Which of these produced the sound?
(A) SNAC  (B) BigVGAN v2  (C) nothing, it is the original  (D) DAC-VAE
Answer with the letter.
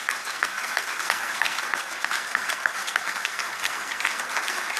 A